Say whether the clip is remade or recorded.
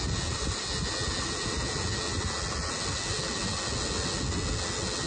recorded